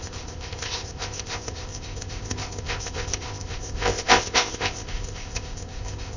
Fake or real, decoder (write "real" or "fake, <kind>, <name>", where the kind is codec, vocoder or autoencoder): fake, codec, ZipCodec